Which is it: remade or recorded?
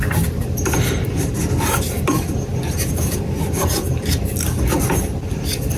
recorded